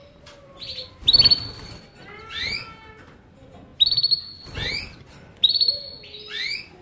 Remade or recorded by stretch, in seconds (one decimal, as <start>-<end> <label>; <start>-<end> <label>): 0.0-6.8 recorded